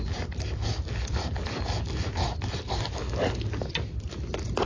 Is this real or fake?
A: real